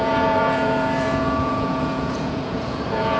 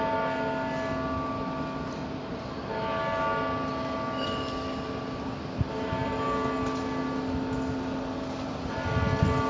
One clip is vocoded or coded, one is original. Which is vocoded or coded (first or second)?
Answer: first